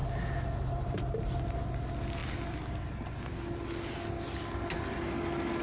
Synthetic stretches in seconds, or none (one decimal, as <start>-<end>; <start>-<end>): none